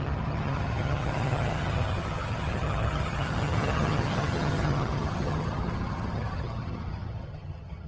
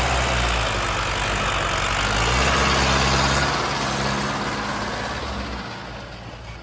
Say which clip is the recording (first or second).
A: second